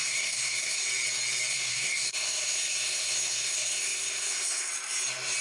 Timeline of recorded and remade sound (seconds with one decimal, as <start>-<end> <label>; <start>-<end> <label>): 0.0-0.9 remade; 0.9-1.5 recorded; 1.5-4.7 remade; 4.7-5.4 recorded